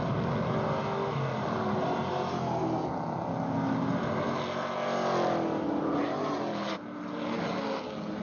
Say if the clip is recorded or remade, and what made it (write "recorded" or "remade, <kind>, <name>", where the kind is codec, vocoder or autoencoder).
recorded